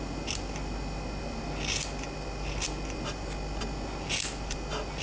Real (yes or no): yes